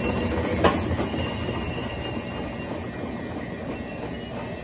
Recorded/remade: recorded